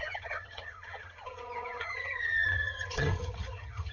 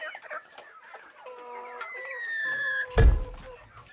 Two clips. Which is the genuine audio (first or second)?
second